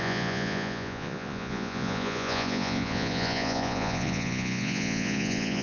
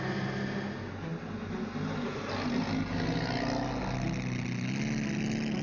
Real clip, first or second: second